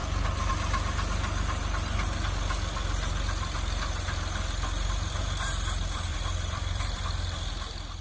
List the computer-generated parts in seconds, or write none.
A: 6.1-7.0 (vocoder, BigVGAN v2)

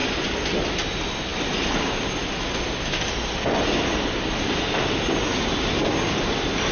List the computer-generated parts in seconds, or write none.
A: none